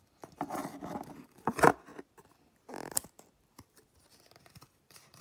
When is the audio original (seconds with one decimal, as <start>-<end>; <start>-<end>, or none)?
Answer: 0.6-1.2; 1.9-4.3